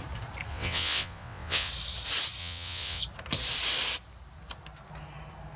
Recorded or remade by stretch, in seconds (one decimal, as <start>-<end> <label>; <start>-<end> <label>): 0.0-0.5 recorded; 0.5-1.7 remade; 1.7-2.4 recorded; 2.4-3.0 remade; 3.0-5.6 recorded